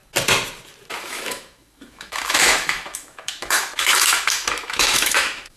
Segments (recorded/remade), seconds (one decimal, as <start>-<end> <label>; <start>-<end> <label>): 0.0-1.0 recorded; 1.0-5.6 remade